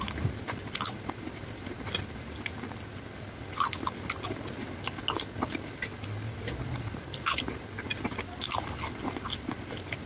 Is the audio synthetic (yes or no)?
no